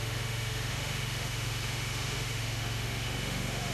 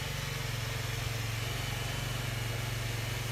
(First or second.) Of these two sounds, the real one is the second